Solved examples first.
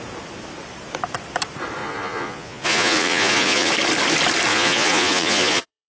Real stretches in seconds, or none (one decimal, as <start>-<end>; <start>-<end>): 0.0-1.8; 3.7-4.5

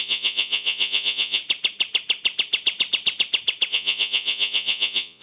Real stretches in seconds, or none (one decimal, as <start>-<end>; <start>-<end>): 1.4-3.7

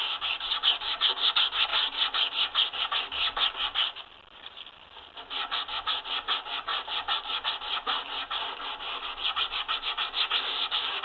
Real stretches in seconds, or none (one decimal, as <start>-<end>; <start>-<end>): 0.0-11.0

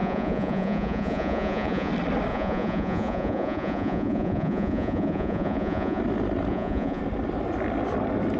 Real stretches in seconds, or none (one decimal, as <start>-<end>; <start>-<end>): 1.9-2.3; 6.0-6.5; 7.0-8.4

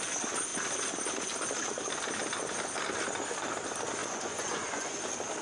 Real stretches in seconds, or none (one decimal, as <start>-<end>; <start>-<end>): 0.0-4.0; 5.0-5.4

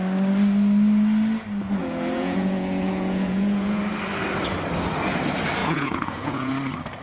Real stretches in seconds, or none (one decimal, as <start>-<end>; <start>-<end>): 0.0-1.8; 3.8-5.6; 6.5-7.0

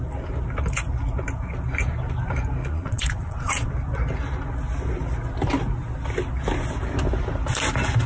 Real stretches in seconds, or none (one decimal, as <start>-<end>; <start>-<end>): 0.0-2.6; 3.7-8.1

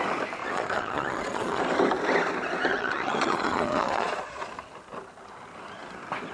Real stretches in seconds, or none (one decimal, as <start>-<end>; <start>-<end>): 0.0-0.4; 1.6-2.7; 4.5-6.3